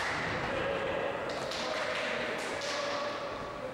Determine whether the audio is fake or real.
real